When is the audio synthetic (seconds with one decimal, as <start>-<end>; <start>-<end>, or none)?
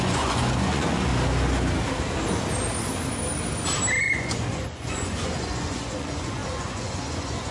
0.0-1.1; 4.0-7.5